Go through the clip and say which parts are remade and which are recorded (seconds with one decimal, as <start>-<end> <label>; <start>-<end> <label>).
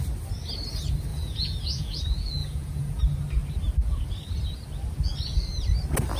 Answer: 0.0-1.1 recorded; 1.1-2.0 remade; 2.0-2.4 recorded; 2.4-3.0 remade; 3.0-6.2 recorded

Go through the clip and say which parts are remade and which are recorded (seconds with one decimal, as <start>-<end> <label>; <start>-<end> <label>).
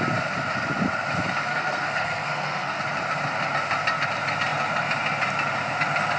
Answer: 0.0-1.5 recorded; 1.5-2.8 remade; 2.8-6.2 recorded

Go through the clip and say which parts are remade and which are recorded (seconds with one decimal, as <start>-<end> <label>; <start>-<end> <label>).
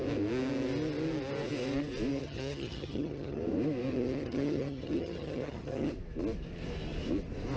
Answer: 0.0-2.1 recorded; 2.1-3.4 remade; 3.4-3.9 recorded; 3.9-5.9 remade; 5.9-7.6 recorded